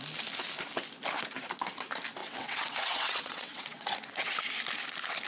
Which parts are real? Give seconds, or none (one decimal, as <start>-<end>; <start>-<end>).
0.0-2.2; 4.4-5.3